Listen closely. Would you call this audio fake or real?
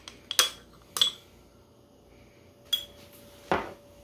real